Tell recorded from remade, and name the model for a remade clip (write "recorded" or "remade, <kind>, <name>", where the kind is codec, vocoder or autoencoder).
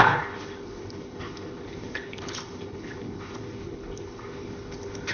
remade, codec, HILCodec